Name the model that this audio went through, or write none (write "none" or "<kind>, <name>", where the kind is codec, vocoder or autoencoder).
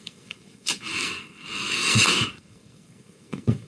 codec, SNAC